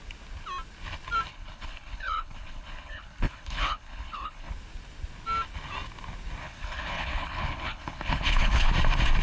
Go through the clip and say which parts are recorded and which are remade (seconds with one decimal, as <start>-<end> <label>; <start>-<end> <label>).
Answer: 0.0-1.3 recorded; 1.3-4.5 remade; 4.5-6.4 recorded; 6.4-8.7 remade; 8.7-9.2 recorded